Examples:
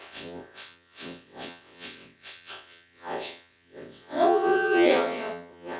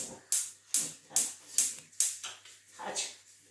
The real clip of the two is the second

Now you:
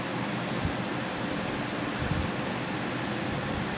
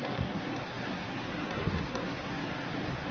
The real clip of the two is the first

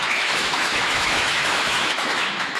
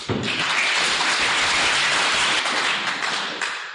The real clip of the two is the second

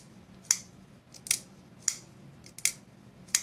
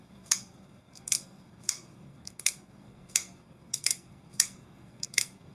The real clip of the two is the first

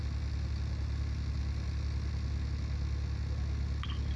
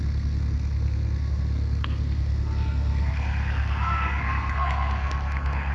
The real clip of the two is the first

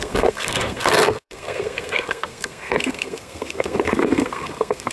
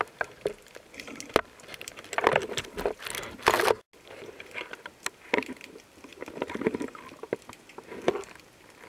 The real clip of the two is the second